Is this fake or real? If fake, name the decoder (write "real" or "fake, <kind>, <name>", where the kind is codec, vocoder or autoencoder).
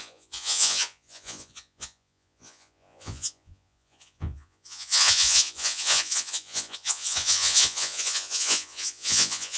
fake, vocoder, Vocos